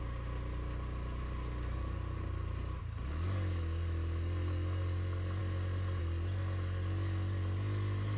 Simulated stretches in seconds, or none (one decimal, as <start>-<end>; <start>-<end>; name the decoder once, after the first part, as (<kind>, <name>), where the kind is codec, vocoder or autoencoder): none